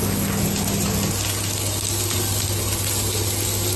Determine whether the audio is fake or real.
real